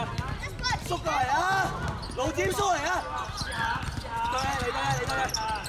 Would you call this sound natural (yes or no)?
yes